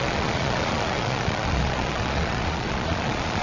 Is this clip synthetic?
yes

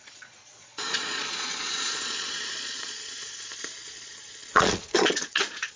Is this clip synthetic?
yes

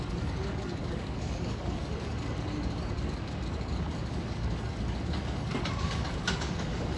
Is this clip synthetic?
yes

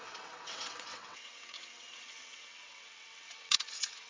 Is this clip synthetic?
yes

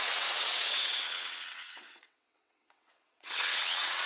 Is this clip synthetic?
yes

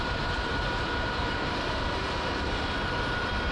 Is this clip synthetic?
yes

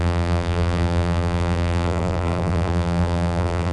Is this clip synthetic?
yes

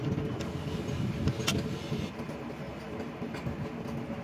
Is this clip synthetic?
no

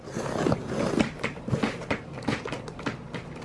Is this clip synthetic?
no